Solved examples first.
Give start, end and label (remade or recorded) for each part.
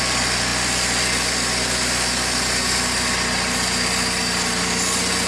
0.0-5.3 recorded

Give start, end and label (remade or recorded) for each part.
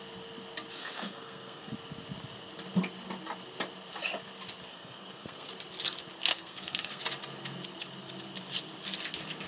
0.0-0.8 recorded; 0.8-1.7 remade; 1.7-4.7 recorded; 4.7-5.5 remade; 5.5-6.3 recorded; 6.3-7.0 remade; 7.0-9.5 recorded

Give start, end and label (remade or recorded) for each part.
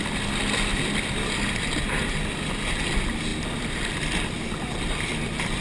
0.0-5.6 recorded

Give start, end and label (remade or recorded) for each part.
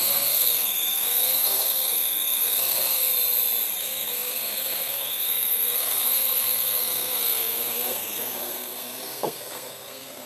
0.0-3.1 remade; 3.1-3.8 recorded; 3.8-10.3 remade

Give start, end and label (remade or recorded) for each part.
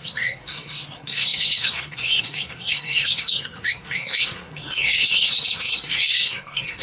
0.0-6.8 remade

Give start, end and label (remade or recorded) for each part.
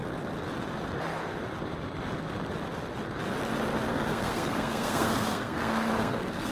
0.0-3.9 recorded; 3.9-6.5 remade